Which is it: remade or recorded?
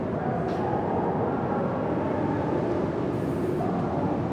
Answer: recorded